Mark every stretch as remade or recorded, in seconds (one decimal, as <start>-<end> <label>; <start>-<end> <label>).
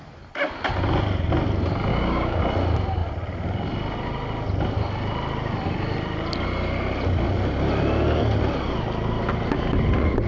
0.0-1.9 recorded; 1.9-2.4 remade; 2.4-10.3 recorded